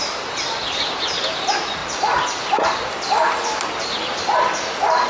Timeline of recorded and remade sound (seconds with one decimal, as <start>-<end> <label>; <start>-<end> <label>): 0.0-1.8 remade; 1.8-5.1 recorded